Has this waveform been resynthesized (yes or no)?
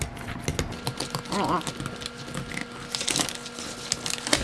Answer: no